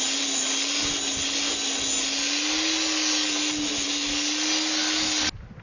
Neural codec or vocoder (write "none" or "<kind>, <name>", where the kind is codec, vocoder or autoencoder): none